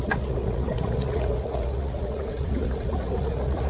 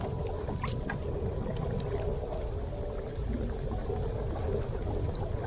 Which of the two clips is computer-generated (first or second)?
first